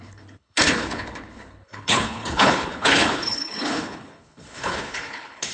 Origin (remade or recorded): remade